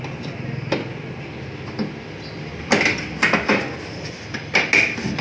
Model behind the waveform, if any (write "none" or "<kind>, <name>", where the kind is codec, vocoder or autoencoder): none